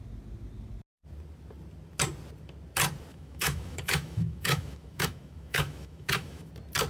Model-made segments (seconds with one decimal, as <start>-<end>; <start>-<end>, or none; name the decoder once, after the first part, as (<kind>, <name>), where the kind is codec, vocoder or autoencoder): 3.1-6.5 (autoencoder, DAC-VAE)